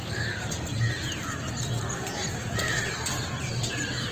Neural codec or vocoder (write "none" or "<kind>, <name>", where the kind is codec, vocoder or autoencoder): vocoder, BigVGAN v2